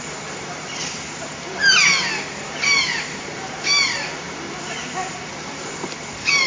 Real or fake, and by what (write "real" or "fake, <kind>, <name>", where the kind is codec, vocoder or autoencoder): real